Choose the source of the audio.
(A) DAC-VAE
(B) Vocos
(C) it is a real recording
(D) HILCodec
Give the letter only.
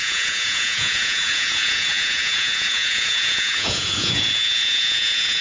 B